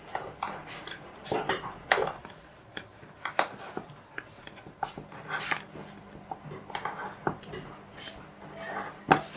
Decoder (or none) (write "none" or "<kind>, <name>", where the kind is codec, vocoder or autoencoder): none